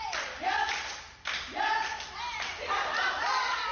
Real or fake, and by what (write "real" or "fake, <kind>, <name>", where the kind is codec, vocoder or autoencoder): real